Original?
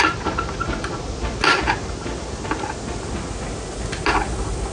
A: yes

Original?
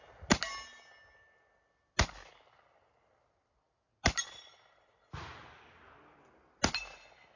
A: yes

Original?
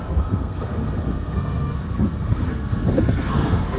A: no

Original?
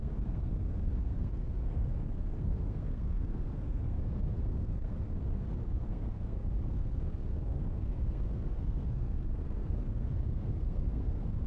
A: no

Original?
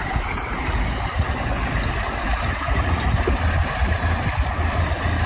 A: yes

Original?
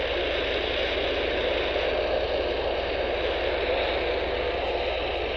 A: yes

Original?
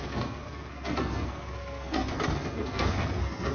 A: no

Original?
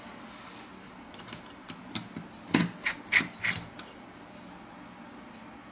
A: yes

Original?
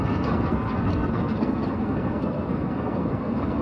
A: no